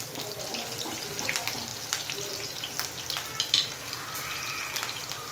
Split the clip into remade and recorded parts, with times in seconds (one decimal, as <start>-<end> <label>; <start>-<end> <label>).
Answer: 0.0-5.3 recorded